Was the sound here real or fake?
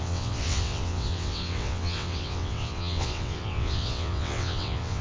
fake